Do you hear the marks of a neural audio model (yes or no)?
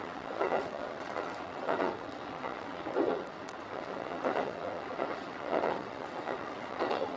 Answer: yes